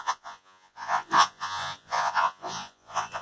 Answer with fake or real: fake